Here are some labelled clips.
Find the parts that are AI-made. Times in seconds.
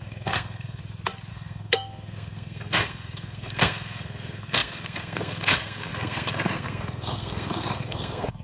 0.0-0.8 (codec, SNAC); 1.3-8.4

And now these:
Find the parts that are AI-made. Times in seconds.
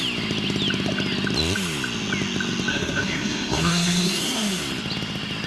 2.7-4.6 (codec, SNAC)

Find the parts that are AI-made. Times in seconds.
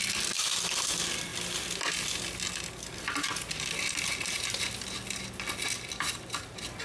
none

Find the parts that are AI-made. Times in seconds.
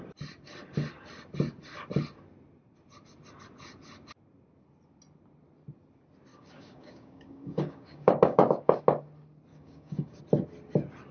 6.3-8.8 (codec, DAC); 9.5-10.2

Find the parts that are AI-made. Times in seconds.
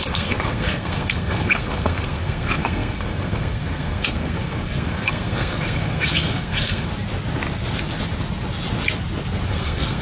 0.0-6.9 (codec, SNAC); 9.5-10.0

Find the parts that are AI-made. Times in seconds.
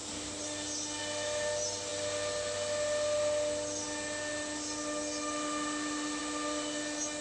none